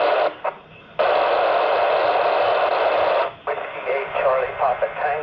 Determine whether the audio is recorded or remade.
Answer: recorded